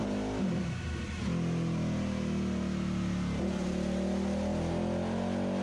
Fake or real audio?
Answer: real